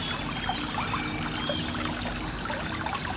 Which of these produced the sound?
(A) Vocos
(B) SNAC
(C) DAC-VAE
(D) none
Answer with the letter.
D